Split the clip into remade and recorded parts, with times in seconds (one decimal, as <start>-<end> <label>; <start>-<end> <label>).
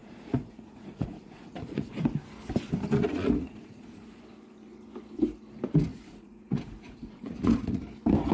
0.0-2.0 remade; 2.0-3.0 recorded; 3.0-4.2 remade; 4.2-5.9 recorded; 5.9-7.8 remade; 7.8-8.3 recorded